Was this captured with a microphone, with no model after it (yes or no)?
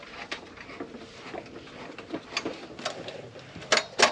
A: yes